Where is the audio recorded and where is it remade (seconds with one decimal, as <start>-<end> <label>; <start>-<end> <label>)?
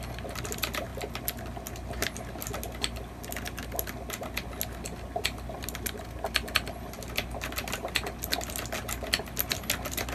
0.0-10.1 recorded